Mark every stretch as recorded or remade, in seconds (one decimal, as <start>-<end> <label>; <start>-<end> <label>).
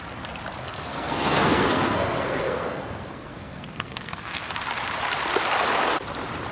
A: 0.0-0.6 recorded; 0.6-4.5 remade; 4.5-6.5 recorded